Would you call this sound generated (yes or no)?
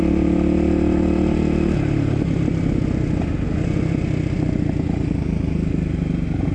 no